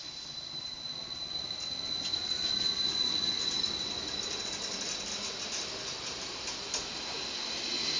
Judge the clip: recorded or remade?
recorded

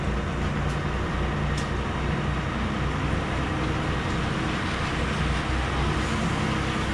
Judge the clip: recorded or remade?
recorded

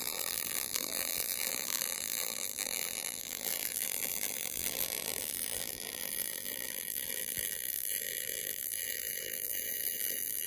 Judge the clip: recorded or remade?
remade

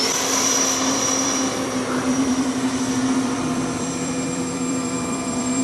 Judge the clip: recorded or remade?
remade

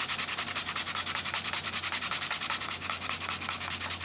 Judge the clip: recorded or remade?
recorded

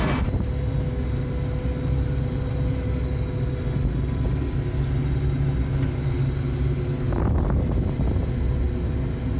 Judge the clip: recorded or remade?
recorded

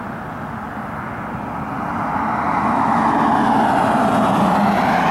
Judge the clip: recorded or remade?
recorded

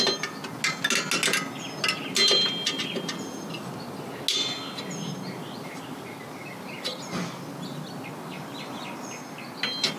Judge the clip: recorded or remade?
recorded